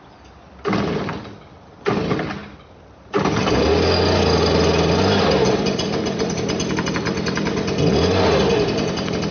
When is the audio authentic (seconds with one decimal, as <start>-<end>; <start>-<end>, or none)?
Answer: 0.0-9.3